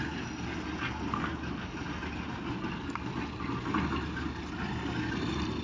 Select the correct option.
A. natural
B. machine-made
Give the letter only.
A